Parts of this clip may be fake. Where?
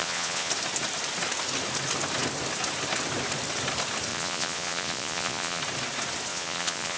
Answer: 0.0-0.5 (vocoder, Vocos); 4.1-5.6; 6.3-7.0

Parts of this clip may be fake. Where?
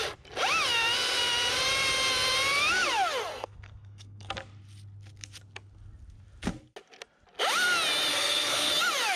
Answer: 3.3-4.3 (codec, SNAC); 8.1-8.7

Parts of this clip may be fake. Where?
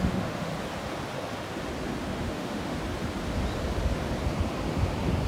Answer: 0.0-0.5 (autoencoder, DAC-VAE); 2.1-2.8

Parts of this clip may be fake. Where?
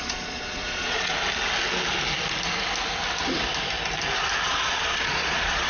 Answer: 0.0-1.1 (vocoder, Vocos); 4.5-5.7